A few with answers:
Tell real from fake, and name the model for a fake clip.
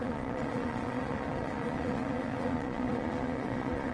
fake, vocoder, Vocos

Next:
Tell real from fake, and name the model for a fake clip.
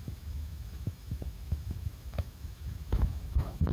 fake, autoencoder, DAC-VAE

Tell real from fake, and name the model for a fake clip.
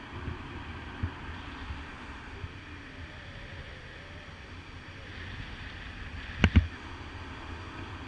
real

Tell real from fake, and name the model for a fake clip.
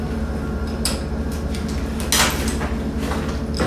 real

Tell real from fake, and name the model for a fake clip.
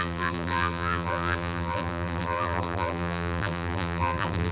fake, vocoder, BigVGAN v2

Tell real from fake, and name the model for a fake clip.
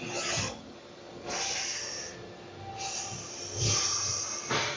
real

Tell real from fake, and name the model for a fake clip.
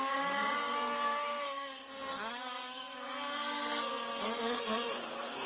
fake, codec, SNAC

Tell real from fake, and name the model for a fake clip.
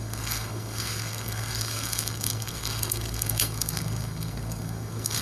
fake, codec, SNAC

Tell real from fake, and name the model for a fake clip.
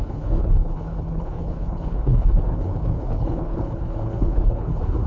fake, codec, HILCodec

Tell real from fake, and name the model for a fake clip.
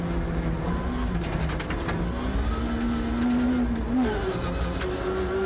real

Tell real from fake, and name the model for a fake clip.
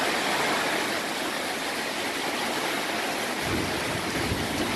real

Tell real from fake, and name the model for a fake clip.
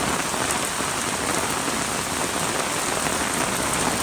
real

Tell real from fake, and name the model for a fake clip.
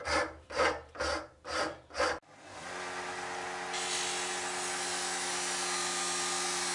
real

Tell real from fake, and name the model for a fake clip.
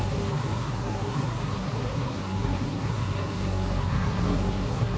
fake, codec, SNAC